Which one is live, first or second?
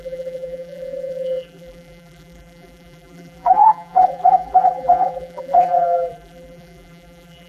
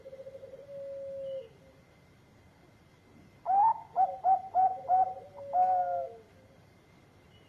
second